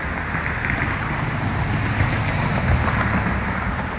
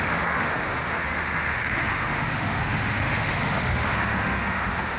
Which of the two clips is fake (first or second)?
second